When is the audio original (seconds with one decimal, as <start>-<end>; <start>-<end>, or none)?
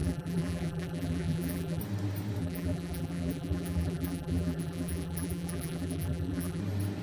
1.8-2.4; 6.6-7.0